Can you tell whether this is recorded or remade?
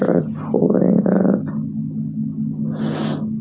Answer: recorded